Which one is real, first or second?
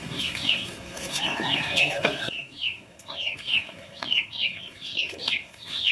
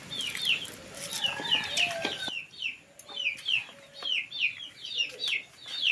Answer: second